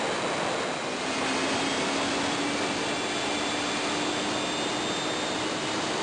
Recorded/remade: recorded